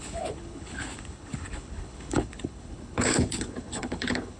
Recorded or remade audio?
remade